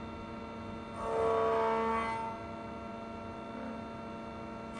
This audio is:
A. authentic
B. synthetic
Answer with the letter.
A